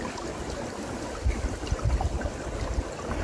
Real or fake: real